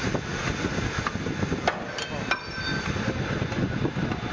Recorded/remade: recorded